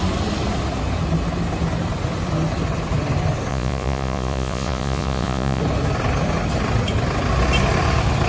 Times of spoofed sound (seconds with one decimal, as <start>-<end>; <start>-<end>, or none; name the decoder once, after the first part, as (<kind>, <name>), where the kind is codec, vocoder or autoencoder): 3.5-5.6 (vocoder, Vocos)